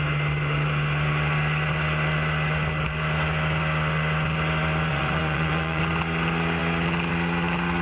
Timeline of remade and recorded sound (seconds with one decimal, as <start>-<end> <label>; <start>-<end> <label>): 0.0-4.9 recorded; 4.9-5.8 remade; 5.8-7.8 recorded